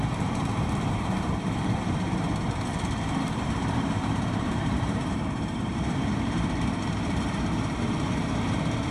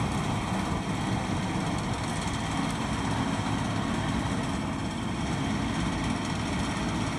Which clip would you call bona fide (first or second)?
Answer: second